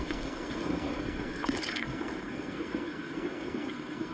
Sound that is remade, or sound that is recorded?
remade